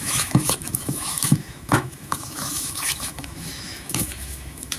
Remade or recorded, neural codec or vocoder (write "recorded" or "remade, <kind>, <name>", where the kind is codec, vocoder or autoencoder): remade, autoencoder, DAC-VAE